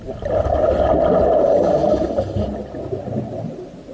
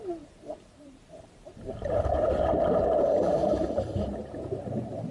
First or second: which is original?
first